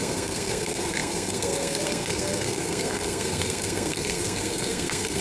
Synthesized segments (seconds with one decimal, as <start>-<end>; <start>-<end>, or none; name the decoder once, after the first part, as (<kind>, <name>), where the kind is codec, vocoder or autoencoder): 0.0-5.2 (codec, SNAC)